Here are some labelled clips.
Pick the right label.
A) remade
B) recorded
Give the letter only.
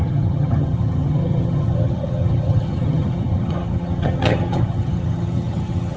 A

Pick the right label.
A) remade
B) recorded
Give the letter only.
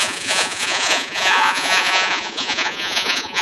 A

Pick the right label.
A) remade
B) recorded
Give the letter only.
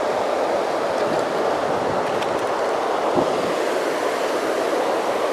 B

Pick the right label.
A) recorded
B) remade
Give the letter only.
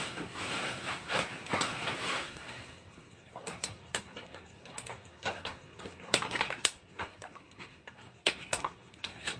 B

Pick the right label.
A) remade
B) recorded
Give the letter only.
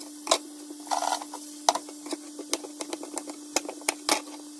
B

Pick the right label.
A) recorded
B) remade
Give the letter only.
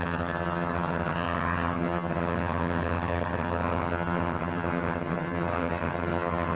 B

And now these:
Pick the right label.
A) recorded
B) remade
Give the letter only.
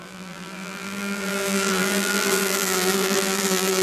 B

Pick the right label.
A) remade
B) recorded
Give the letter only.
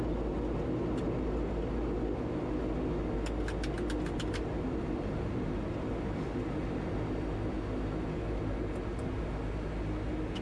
B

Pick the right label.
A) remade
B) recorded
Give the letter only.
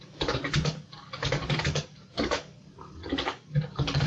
A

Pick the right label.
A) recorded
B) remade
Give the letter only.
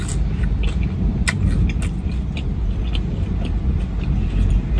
A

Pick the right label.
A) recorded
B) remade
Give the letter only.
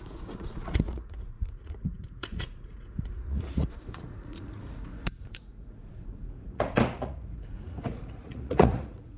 B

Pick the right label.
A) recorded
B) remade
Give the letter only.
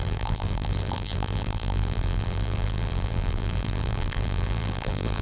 B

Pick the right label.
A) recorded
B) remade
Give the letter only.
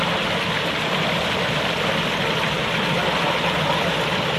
A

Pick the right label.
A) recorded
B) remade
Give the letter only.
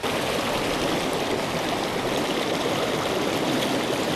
A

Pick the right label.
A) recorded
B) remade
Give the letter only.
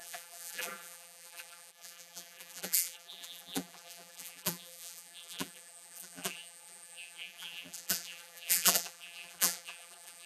B